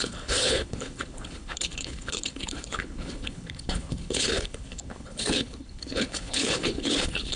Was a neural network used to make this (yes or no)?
yes